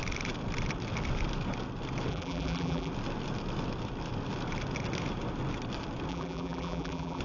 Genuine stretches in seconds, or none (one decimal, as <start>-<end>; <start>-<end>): 0.0-2.1; 2.9-6.1

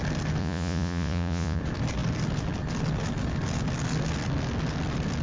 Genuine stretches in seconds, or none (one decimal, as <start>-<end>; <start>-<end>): 0.0-0.4; 1.6-5.2